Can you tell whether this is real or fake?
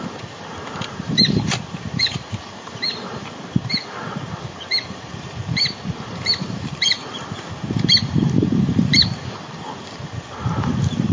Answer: fake